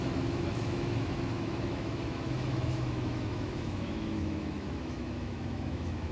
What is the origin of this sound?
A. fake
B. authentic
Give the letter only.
A